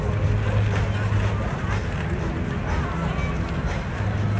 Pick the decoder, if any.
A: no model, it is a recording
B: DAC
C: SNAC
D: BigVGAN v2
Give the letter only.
A